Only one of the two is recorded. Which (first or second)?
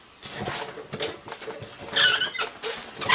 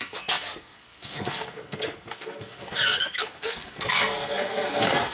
first